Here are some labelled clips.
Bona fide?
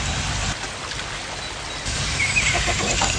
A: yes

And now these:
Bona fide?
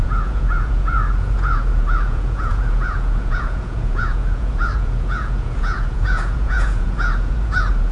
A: no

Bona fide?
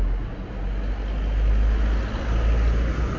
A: yes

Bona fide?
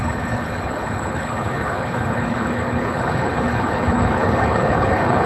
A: no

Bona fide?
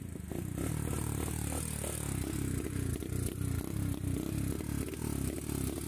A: yes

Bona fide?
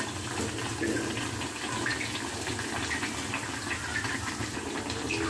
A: yes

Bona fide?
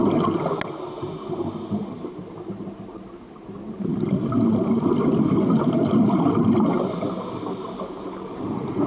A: yes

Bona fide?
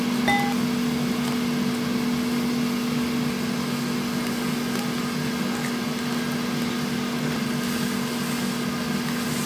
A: yes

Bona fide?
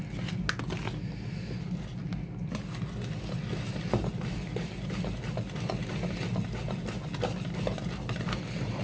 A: yes